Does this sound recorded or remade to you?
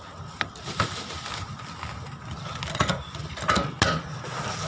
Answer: recorded